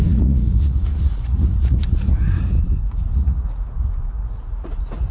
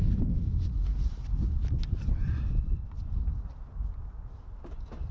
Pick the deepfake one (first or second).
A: first